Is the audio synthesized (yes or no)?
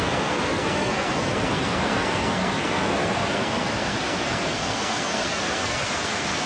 yes